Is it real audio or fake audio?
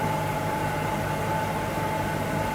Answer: real